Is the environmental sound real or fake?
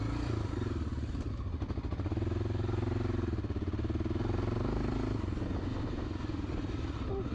real